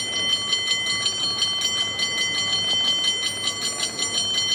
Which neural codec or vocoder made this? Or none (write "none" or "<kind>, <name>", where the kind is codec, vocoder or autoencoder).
none